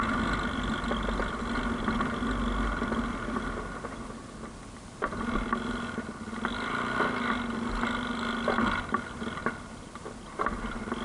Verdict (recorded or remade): recorded